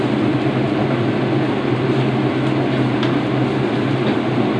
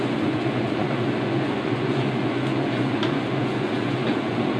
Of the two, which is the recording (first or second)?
first